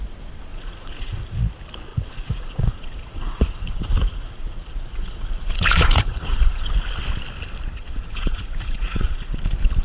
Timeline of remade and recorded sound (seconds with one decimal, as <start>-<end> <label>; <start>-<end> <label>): 0.0-0.5 recorded; 0.5-1.4 remade; 1.4-1.9 recorded; 1.9-6.7 remade; 6.7-7.7 recorded; 7.7-9.4 remade; 9.4-9.8 recorded